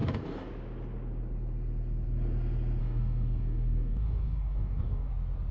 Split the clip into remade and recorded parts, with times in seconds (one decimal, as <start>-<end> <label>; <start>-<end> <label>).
0.0-0.5 remade; 0.5-2.8 recorded; 2.8-5.1 remade; 5.1-5.5 recorded